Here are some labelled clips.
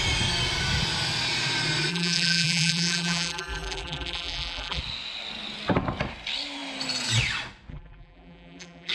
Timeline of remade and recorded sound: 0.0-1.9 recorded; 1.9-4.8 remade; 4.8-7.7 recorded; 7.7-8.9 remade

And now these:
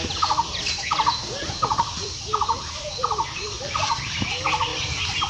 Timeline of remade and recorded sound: 0.0-1.4 recorded; 1.4-4.3 remade; 4.3-4.7 recorded; 4.7-5.3 remade

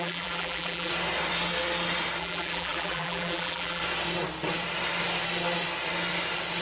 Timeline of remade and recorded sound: 0.0-0.9 remade; 0.9-2.2 recorded; 2.2-3.8 remade; 3.8-6.6 recorded

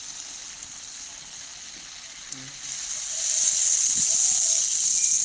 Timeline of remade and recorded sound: 0.0-5.2 recorded

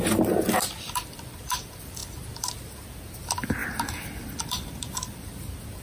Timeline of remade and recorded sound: 0.0-2.0 remade; 2.0-2.5 recorded; 2.5-5.8 remade